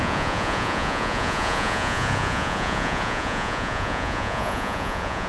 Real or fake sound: fake